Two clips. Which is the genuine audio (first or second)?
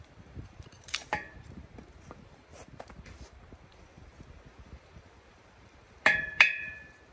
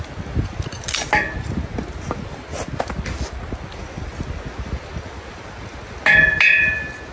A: second